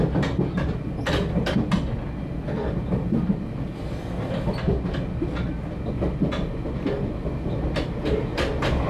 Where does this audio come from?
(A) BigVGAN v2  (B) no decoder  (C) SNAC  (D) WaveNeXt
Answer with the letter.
B